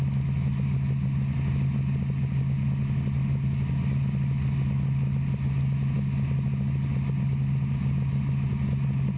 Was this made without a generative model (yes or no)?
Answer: yes